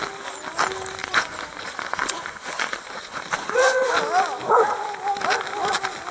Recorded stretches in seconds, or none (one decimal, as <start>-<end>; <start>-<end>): 0.0-1.0; 3.9-6.1